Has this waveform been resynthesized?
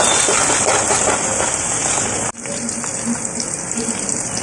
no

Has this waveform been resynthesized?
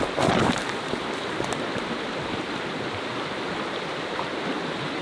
no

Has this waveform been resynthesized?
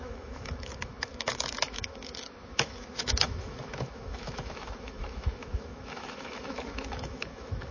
yes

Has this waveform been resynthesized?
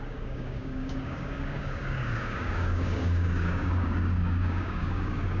yes